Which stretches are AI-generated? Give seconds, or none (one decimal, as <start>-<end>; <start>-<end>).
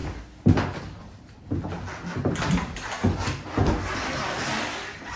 none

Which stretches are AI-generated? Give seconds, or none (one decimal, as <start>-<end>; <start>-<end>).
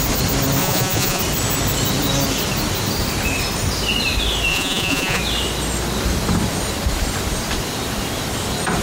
0.6-1.2; 4.5-5.2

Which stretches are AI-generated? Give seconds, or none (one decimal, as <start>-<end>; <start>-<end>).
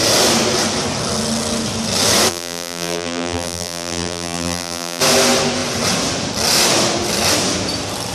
2.3-5.0